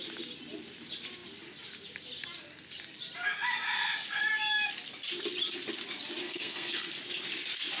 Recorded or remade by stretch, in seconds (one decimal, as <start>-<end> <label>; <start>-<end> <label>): 0.0-6.2 recorded; 6.2-6.9 remade; 6.9-7.8 recorded